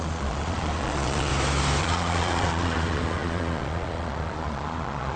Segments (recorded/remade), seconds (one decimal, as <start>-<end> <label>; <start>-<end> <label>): 0.0-1.3 remade; 1.3-1.8 recorded; 1.8-5.2 remade